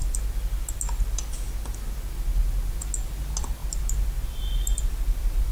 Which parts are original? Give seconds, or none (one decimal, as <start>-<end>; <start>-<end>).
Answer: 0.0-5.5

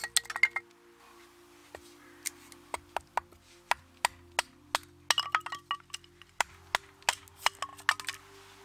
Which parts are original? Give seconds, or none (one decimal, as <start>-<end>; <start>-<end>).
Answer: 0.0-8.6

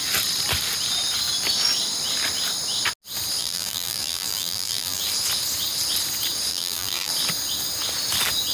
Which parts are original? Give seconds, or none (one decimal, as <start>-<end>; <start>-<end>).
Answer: 0.0-3.4; 5.0-6.5; 7.1-8.5

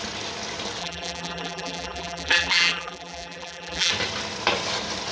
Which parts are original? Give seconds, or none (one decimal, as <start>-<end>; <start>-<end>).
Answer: 0.0-0.8; 3.9-5.1